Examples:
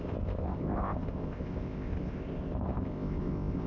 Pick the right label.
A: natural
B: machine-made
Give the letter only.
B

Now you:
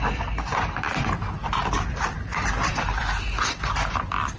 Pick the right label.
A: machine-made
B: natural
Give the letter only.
B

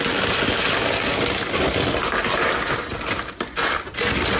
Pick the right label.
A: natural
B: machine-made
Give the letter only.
A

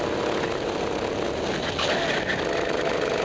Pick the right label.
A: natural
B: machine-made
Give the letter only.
A